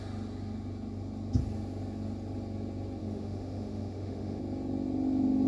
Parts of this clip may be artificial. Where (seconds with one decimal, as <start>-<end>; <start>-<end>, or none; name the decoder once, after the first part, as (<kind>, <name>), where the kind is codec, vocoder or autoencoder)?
3.0-4.4 (autoencoder, DAC-VAE)